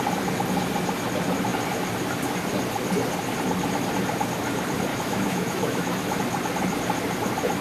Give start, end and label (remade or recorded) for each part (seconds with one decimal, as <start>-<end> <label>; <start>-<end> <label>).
0.0-4.9 recorded; 4.9-6.2 remade; 6.2-7.6 recorded